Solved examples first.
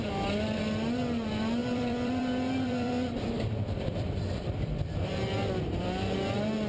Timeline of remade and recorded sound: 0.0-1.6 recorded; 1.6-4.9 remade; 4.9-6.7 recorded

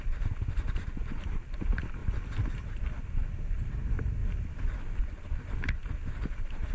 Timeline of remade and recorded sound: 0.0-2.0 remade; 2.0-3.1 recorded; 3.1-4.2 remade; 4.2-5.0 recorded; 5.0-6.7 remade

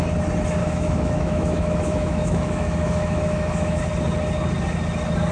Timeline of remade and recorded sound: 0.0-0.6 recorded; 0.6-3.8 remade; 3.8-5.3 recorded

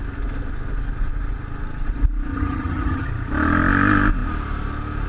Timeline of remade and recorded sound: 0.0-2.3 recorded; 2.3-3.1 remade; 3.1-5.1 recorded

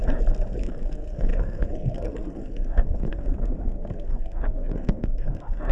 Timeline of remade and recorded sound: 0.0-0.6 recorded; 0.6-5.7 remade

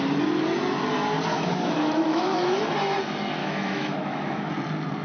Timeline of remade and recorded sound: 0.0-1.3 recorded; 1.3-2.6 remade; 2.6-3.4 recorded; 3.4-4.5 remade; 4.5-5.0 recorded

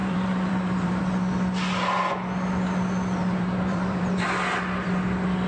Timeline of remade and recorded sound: 0.0-1.0 remade; 1.0-3.2 recorded; 3.2-4.2 remade; 4.2-5.5 recorded

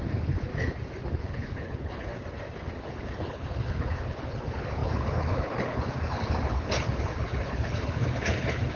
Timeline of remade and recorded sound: 0.0-0.5 remade; 0.5-1.1 recorded; 1.1-2.1 remade; 2.1-2.8 recorded; 2.8-8.8 remade